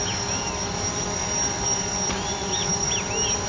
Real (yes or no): yes